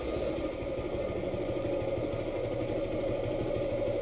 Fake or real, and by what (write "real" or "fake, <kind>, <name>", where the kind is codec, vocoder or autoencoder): real